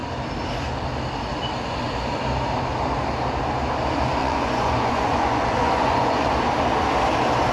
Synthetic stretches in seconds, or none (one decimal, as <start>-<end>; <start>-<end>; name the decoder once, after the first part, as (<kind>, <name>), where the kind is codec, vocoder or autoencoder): 4.2-6.3 (vocoder, Vocos)